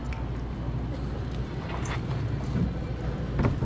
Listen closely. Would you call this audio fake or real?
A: real